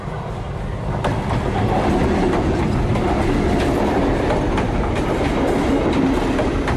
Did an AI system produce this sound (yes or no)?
no